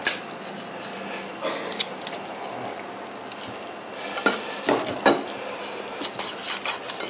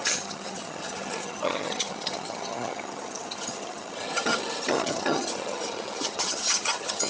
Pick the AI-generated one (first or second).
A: second